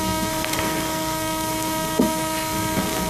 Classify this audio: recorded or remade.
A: remade